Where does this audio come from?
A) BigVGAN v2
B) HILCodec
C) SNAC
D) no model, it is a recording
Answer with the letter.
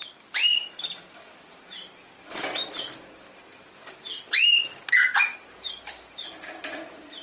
A